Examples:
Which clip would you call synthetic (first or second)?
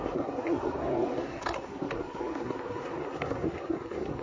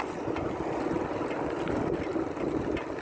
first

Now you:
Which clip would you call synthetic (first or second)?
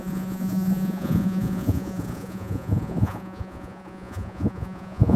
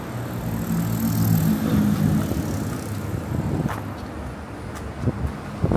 first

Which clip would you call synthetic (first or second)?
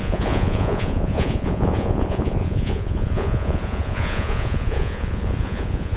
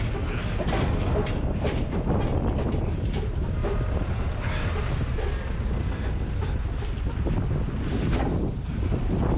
first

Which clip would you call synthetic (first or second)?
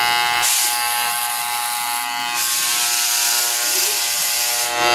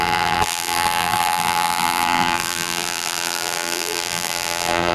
second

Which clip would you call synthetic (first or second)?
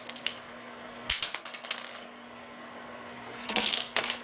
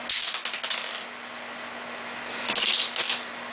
first